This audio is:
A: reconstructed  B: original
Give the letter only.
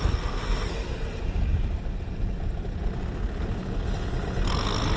B